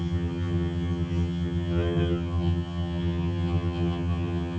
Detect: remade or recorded remade